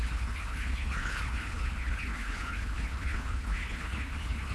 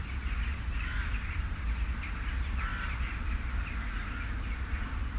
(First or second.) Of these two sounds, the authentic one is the second